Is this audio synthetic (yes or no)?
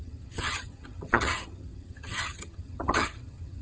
yes